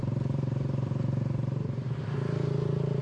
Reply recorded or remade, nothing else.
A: remade